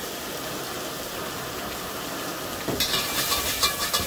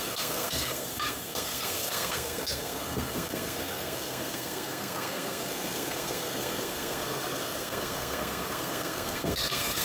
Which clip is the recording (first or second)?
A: first